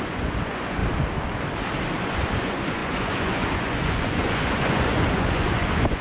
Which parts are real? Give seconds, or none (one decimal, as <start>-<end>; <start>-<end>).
0.8-2.0